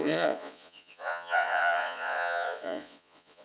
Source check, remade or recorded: remade